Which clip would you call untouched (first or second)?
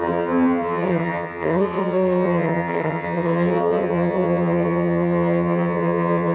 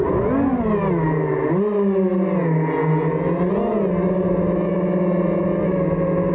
second